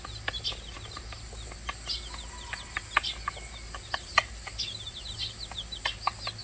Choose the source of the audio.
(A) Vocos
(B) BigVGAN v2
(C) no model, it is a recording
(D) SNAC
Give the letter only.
C